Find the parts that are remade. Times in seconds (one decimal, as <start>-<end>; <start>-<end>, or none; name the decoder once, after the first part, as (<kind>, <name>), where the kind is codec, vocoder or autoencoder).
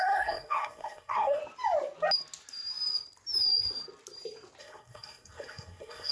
0.0-1.4 (codec, SNAC); 4.6-6.1